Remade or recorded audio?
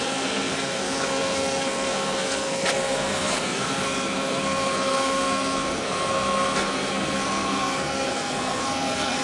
remade